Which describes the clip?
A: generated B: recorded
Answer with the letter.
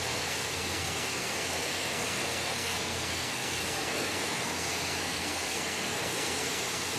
A